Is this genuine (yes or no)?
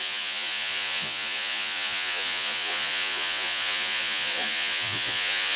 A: no